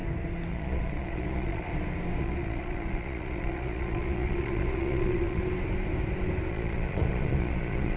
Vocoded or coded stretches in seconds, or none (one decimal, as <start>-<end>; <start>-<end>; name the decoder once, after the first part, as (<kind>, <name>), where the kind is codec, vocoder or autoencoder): 0.5-1.7 (vocoder, Vocos); 2.2-5.4; 6.5-8.0